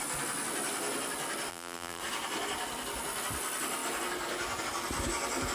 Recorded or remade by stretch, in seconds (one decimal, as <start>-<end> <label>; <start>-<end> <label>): 0.0-1.5 recorded; 1.5-2.0 remade; 2.0-5.5 recorded